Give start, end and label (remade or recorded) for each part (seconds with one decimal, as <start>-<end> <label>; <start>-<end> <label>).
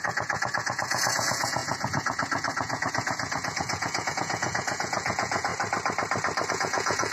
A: 0.0-5.5 remade; 5.5-6.5 recorded; 6.5-7.1 remade